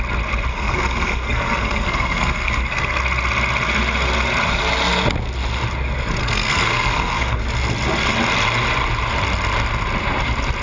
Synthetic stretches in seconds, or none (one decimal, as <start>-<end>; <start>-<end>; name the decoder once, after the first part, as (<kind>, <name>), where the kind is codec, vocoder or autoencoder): 0.5-3.0 (codec, SNAC); 6.2-7.4